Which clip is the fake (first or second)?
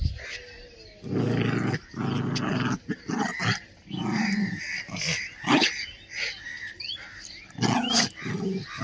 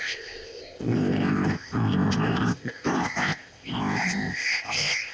second